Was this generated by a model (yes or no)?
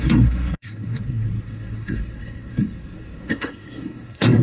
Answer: yes